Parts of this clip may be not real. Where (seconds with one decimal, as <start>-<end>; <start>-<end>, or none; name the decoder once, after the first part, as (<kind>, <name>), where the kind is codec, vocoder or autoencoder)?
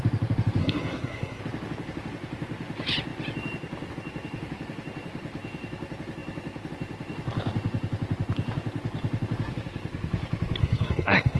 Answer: 0.6-1.4 (codec, SNAC); 10.6-11.4